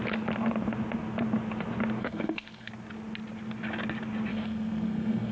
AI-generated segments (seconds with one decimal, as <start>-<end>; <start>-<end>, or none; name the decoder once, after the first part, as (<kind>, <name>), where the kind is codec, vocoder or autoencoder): 2.0-2.7 (codec, SNAC); 4.3-5.3